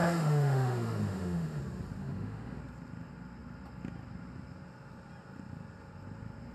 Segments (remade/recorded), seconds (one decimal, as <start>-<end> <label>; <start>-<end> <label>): 0.0-1.6 remade; 1.6-2.0 recorded; 2.0-2.6 remade; 2.6-6.5 recorded